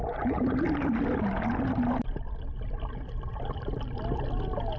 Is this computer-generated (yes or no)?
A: no